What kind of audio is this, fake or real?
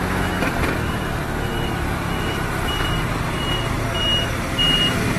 real